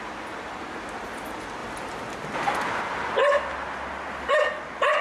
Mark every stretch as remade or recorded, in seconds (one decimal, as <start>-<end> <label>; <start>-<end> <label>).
0.0-5.0 recorded

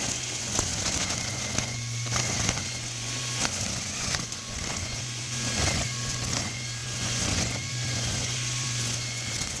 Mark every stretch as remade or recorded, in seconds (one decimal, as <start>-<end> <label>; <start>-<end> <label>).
0.0-9.6 remade

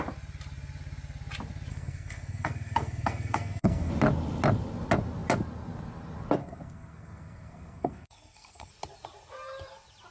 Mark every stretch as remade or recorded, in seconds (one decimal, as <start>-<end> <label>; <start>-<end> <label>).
0.0-1.7 recorded; 1.7-3.9 remade; 3.9-6.4 recorded; 6.4-8.7 remade; 8.7-10.1 recorded

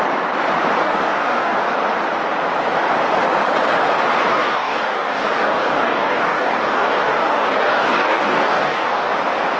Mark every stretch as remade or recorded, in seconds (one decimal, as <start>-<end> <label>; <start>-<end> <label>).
0.0-0.8 recorded; 0.8-1.6 remade; 1.6-4.3 recorded; 4.3-9.1 remade; 9.1-9.6 recorded

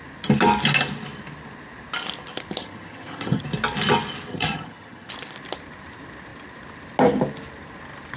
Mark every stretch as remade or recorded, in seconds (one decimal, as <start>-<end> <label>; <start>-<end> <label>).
0.0-2.6 recorded; 2.6-3.4 remade; 3.4-4.3 recorded; 4.3-5.1 remade; 5.1-8.2 recorded

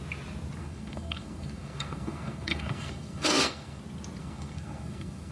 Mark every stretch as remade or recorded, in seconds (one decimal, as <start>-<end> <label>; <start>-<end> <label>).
0.0-0.6 recorded; 0.6-3.8 remade; 3.8-4.2 recorded; 4.2-5.3 remade